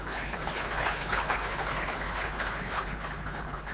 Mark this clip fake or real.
fake